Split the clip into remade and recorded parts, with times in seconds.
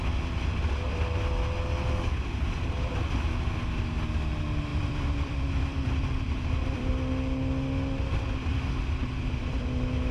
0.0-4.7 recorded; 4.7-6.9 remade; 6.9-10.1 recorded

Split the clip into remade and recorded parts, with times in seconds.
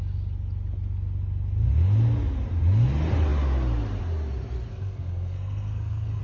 0.0-4.7 recorded; 4.7-6.2 remade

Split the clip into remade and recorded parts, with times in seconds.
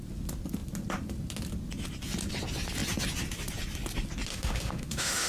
0.0-4.3 recorded; 4.3-5.3 remade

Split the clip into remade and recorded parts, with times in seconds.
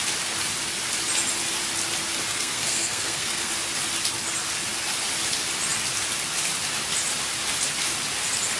0.0-2.3 recorded; 2.3-3.5 remade; 3.5-8.6 recorded